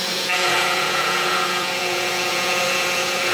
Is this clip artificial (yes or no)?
yes